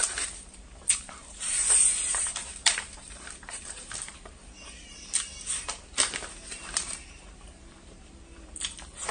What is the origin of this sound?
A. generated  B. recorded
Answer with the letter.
A